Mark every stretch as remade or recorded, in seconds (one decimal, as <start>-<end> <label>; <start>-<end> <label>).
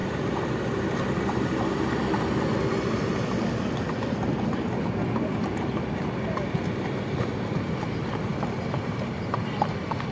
0.0-2.0 remade; 2.0-5.3 recorded; 5.3-6.0 remade; 6.0-8.3 recorded; 8.3-9.7 remade; 9.7-10.1 recorded